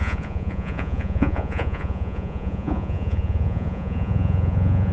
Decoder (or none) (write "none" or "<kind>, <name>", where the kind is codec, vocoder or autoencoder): vocoder, Vocos